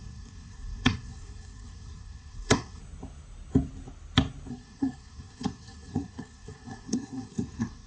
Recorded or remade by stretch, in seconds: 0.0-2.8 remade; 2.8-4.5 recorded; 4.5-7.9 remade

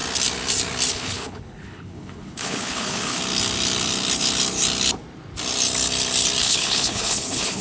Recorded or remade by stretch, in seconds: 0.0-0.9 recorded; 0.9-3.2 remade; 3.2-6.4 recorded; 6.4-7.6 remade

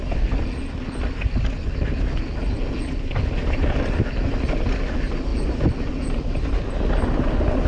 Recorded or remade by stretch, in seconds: 0.0-7.7 recorded

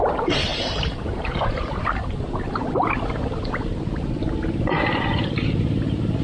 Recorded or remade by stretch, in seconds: 0.0-6.2 remade